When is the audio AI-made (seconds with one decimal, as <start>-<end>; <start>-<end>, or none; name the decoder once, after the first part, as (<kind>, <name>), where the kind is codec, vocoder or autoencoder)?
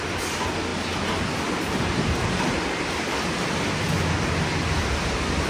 none